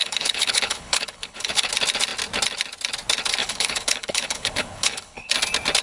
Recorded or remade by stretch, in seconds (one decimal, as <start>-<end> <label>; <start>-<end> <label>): 0.0-1.7 remade; 1.7-3.4 recorded; 3.4-5.3 remade; 5.3-5.8 recorded